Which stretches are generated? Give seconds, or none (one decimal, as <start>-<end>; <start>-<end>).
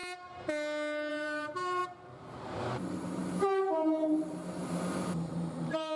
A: 1.1-1.8; 2.6-6.0